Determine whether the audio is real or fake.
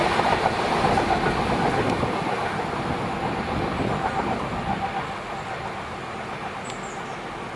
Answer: real